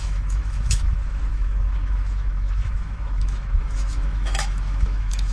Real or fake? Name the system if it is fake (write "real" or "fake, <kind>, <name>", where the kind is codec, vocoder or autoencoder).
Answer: fake, autoencoder, DAC-VAE